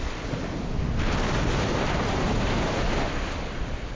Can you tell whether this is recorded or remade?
recorded